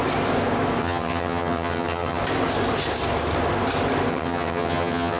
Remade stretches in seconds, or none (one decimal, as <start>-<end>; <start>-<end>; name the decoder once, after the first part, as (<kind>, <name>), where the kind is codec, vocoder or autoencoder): 0.8-2.2 (vocoder, HiFi-GAN); 4.1-5.2